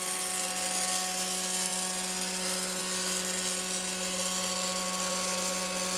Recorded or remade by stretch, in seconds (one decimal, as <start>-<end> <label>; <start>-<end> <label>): 0.0-6.0 recorded